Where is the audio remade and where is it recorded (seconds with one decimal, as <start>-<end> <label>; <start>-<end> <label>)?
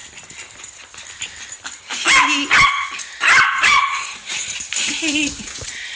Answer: 0.0-3.6 recorded; 3.6-6.0 remade